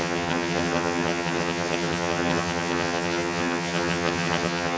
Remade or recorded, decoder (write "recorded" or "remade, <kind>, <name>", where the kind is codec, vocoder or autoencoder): remade, vocoder, HiFi-GAN